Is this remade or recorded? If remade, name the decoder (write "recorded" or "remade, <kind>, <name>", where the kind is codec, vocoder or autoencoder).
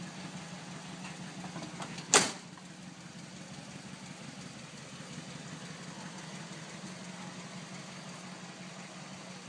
recorded